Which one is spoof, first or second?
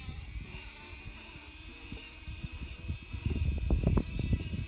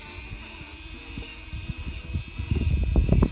first